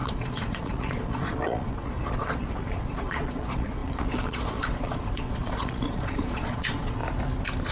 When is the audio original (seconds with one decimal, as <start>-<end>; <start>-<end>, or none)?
7.0-7.7